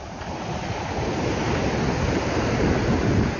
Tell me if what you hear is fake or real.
real